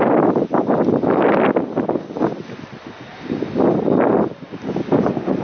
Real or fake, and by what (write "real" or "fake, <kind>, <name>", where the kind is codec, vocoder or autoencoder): real